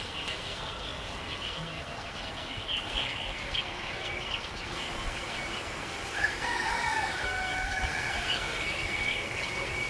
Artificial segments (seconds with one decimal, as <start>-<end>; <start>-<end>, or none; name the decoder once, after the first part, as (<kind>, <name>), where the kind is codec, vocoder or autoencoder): 0.0-9.9 (codec, SNAC)